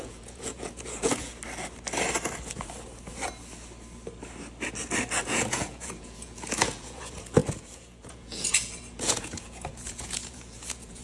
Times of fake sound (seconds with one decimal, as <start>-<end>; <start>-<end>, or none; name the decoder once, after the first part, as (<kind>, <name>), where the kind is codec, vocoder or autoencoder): 0.0-1.3 (vocoder, Vocos); 5.2-11.0